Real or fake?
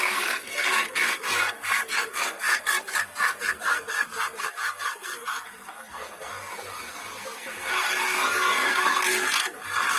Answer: fake